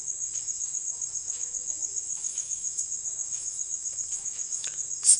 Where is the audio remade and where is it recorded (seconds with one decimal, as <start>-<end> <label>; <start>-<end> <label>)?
0.0-5.2 remade